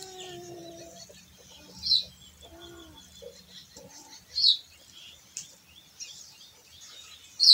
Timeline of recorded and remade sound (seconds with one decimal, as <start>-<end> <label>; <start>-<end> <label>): 0.0-7.5 recorded